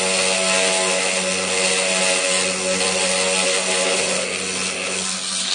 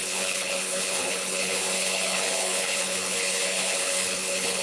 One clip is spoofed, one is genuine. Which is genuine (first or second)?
first